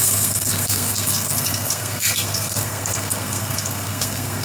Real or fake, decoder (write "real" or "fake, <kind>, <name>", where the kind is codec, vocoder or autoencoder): fake, codec, SNAC